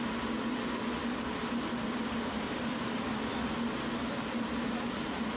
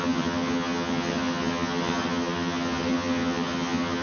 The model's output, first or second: second